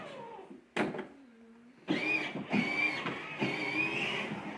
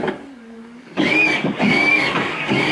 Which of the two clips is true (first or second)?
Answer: first